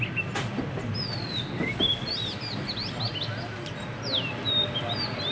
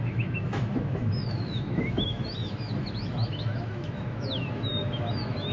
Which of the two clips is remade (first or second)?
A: second